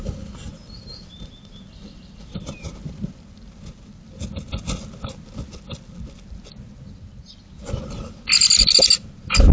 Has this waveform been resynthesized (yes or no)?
no